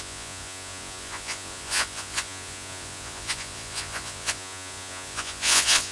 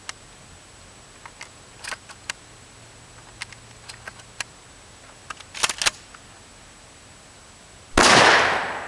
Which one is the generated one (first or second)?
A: first